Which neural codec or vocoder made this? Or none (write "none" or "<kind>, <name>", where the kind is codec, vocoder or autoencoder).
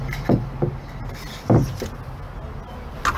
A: none